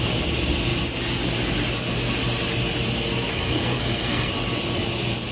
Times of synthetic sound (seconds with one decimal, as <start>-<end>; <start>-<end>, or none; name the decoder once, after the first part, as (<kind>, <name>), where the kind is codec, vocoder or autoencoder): 3.3-4.3 (codec, SNAC)